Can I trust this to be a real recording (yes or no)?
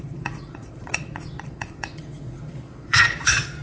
no